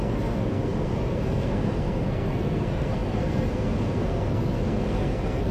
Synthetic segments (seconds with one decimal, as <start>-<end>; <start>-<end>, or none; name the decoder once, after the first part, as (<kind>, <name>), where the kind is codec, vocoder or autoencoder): 0.0-5.5 (codec, SNAC)